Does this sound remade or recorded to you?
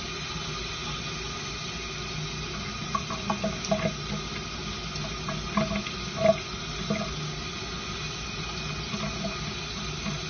recorded